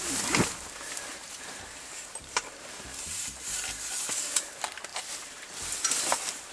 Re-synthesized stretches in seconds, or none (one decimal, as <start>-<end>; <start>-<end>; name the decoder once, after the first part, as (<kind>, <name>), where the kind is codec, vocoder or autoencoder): 1.1-3.3 (vocoder, BigVGAN v2); 4.9-6.5